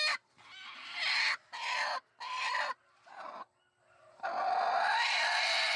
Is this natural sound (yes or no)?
yes